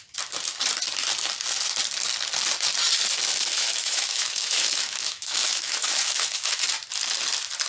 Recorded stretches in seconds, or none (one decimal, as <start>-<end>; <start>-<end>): 0.0-3.5; 6.6-7.7